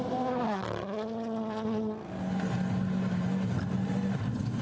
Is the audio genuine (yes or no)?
yes